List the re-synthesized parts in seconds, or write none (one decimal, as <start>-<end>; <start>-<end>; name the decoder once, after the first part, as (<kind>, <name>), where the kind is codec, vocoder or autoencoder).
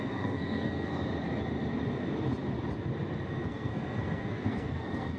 0.0-0.9 (codec, SNAC); 3.3-5.2